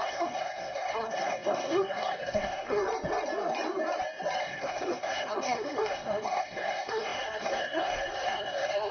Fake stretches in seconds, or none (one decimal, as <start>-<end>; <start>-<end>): 0.0-2.8; 4.4-8.9